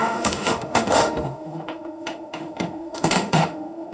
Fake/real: fake